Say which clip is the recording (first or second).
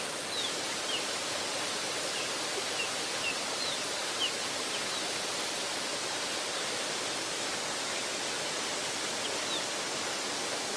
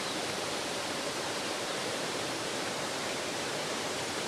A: first